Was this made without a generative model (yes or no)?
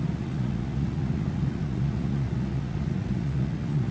no